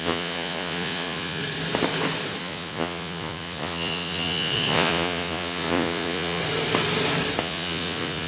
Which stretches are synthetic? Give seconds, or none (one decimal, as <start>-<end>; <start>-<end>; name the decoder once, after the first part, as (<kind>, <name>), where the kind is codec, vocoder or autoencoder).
0.0-1.4 (vocoder, Vocos); 2.4-6.4; 7.4-8.3